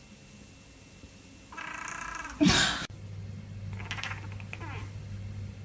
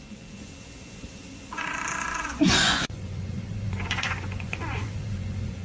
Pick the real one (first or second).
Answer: first